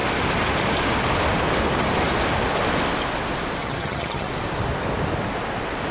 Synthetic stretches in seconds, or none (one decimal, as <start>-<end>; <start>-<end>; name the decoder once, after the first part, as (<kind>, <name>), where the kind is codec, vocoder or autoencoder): 3.6-4.3 (vocoder, HiFi-GAN)